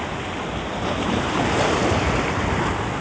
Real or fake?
real